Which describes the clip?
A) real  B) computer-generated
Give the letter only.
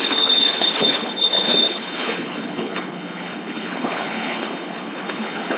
B